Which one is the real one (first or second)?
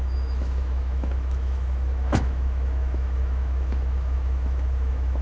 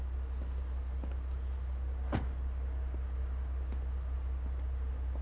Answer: second